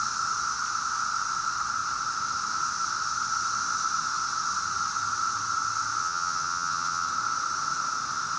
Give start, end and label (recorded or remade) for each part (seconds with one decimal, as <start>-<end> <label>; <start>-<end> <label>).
0.0-6.0 recorded; 6.0-7.1 remade; 7.1-8.4 recorded